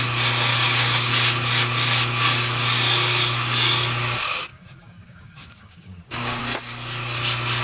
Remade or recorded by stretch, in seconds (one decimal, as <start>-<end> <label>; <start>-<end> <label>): 0.0-0.5 recorded; 0.5-1.1 remade; 1.1-4.5 recorded; 4.5-6.4 remade; 6.4-7.6 recorded